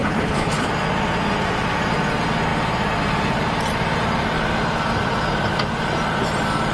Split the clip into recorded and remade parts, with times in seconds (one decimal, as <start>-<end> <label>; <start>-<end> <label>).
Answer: 0.0-0.7 remade; 0.7-6.7 recorded